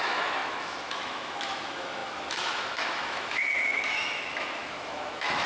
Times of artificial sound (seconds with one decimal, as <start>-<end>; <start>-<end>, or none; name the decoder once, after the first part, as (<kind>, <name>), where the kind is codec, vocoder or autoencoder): 0.0-5.5 (autoencoder, DAC-VAE)